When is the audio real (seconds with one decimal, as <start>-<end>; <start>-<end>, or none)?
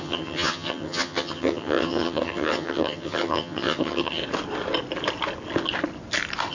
4.2-6.5